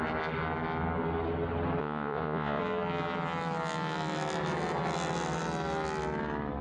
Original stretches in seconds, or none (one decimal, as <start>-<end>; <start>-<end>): 0.0-1.8; 2.6-6.6